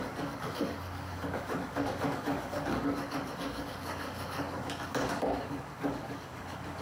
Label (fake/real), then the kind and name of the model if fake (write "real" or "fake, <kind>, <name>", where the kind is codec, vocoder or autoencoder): fake, codec, DAC